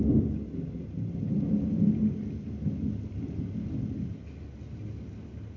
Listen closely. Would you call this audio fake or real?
real